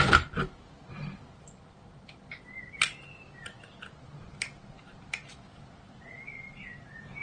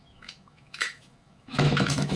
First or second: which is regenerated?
second